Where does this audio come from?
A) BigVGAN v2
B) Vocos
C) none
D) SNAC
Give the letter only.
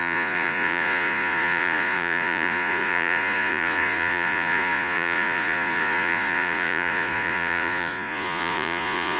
B